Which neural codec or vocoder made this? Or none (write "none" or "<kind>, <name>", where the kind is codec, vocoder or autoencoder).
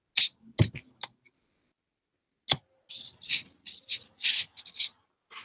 none